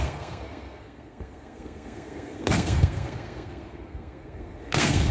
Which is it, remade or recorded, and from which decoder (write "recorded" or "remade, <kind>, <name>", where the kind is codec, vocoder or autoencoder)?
remade, codec, SNAC